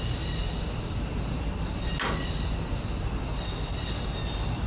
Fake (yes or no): no